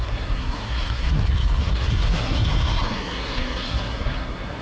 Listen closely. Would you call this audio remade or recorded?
remade